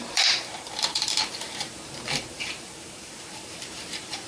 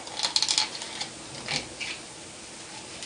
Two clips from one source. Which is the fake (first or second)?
first